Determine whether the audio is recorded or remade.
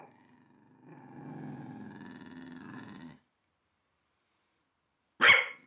recorded